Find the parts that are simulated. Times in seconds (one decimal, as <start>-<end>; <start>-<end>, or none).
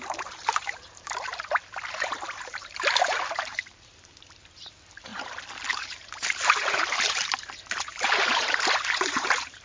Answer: 0.0-5.1; 5.8-9.6